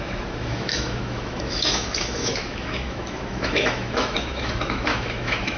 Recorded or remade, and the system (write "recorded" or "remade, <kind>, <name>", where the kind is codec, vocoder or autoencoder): remade, autoencoder, DAC-VAE